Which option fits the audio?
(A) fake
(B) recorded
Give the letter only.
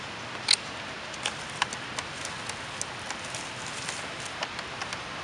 B